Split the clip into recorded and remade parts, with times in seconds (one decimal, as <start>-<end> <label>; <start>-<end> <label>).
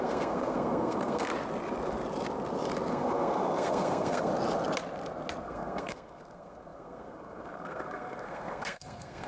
0.0-1.3 remade; 1.3-2.9 recorded; 2.9-4.3 remade; 4.3-5.4 recorded; 5.4-9.3 remade